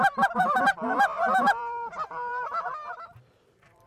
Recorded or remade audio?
remade